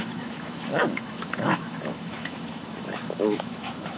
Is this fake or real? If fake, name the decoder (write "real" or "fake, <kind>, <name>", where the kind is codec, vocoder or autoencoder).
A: fake, autoencoder, DAC-VAE